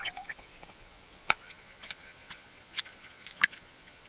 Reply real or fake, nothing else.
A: fake